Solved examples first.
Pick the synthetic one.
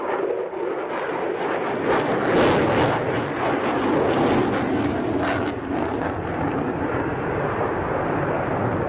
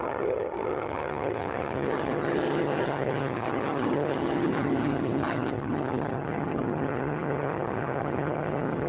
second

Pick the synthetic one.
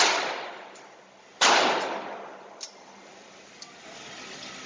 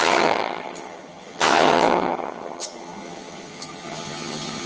second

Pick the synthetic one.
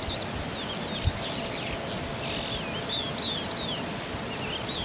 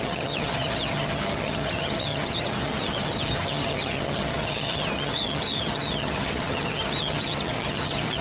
second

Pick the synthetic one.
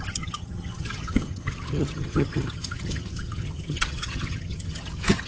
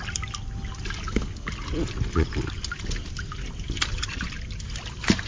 first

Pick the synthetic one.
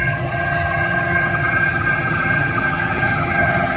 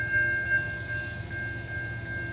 first